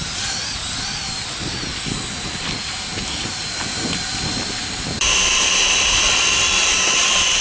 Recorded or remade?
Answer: recorded